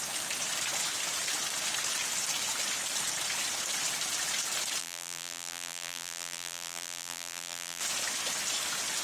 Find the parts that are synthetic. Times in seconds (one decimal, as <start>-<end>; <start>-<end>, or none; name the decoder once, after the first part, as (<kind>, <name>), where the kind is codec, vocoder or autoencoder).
4.8-7.8 (vocoder, BigVGAN v2)